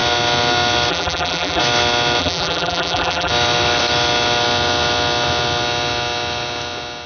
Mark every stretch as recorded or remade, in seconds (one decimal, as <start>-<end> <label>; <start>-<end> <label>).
0.0-0.9 recorded; 0.9-1.6 remade; 1.6-2.2 recorded; 2.2-3.3 remade; 3.3-7.1 recorded